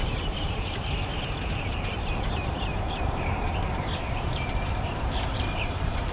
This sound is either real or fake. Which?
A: fake